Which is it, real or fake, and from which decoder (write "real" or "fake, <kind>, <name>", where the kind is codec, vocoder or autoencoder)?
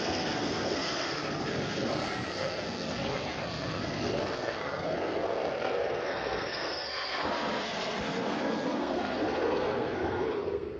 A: fake, codec, SNAC